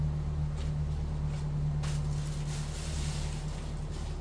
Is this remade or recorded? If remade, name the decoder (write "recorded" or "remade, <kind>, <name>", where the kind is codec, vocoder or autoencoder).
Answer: recorded